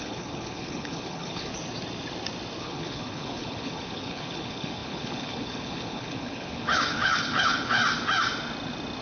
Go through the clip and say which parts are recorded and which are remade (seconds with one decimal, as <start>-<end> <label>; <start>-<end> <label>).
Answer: 0.0-1.5 remade; 1.5-2.6 recorded; 2.6-7.8 remade; 7.8-9.0 recorded